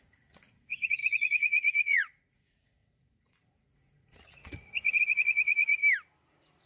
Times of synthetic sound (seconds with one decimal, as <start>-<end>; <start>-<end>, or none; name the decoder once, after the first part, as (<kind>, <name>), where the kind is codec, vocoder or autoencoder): 0.0-5.8 (vocoder, Vocos); 6.3-6.7